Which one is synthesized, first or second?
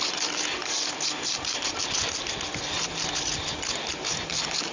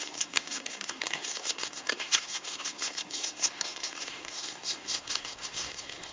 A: second